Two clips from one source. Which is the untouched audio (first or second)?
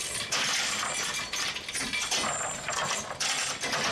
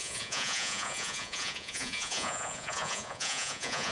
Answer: first